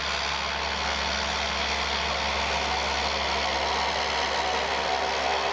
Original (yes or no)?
yes